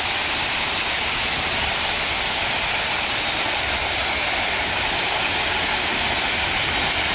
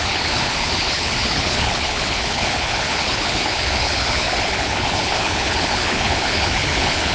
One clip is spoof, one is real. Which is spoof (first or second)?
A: second